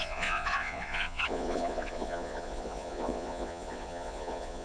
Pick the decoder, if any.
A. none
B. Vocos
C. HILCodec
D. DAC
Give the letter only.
B